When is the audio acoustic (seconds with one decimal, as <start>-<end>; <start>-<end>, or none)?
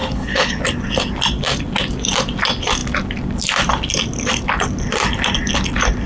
0.6-6.1